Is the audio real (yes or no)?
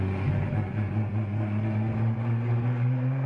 yes